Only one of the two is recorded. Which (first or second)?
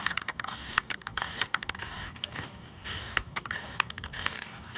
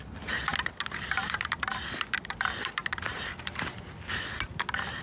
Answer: second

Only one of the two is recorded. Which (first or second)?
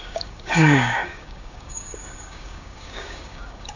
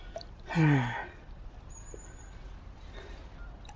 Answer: second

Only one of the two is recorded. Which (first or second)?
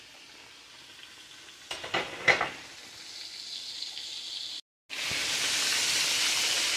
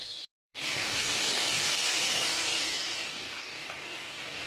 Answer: first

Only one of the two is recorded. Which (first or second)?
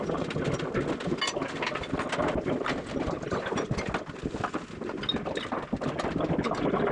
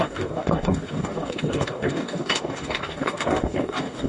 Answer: first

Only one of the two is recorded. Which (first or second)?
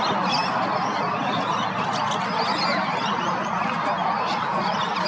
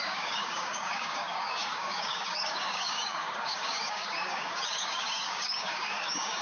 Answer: first